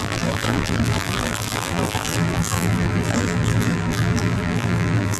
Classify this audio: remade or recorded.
remade